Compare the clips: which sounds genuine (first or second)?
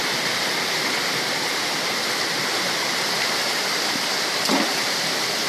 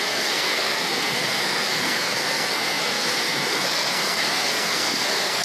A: first